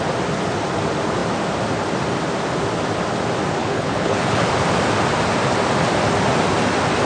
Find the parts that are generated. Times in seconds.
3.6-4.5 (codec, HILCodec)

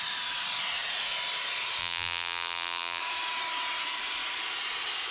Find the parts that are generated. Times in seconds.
1.8-3.0 (vocoder, BigVGAN v2)

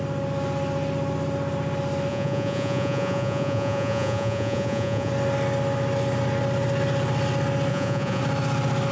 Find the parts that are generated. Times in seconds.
2.1-5.1 (vocoder, Vocos); 7.7-8.2

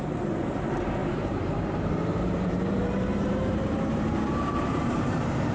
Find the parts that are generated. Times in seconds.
0.0-5.5 (vocoder, BigVGAN v2)

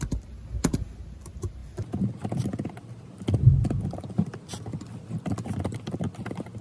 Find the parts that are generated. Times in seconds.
none

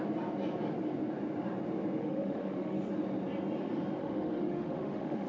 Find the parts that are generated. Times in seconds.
2.0-2.9 (autoencoder, DAC-VAE); 4.0-5.3

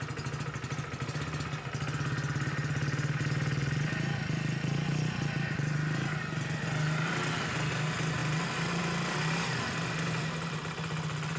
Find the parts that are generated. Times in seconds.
none